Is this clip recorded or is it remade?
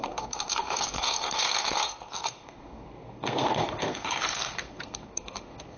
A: remade